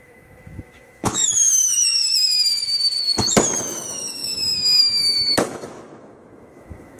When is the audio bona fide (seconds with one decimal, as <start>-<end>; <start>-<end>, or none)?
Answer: 2.0-3.6